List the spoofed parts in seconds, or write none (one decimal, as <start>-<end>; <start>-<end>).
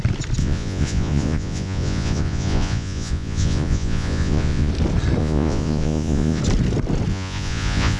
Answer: 0.4-4.7; 5.2-6.4; 7.1-8.0